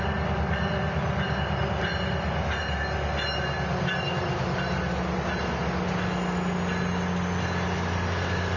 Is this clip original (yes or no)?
yes